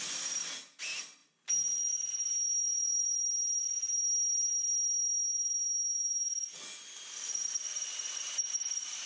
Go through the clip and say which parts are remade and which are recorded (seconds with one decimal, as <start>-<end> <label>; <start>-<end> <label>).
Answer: 0.0-9.1 recorded